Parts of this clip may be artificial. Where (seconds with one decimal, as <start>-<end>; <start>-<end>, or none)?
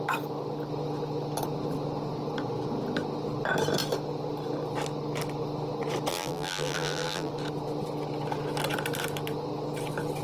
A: 6.1-7.3